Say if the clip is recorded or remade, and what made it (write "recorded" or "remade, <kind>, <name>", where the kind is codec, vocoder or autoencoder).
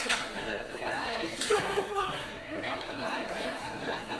remade, codec, SNAC